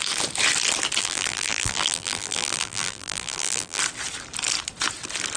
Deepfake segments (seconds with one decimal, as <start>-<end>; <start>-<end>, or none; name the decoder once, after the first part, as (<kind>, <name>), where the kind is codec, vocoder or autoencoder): 1.0-3.8 (vocoder, BigVGAN v2)